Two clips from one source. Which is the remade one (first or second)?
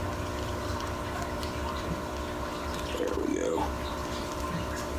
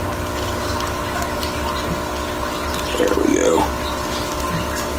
first